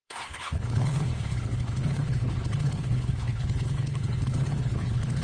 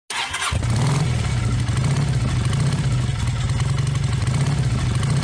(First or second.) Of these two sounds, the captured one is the second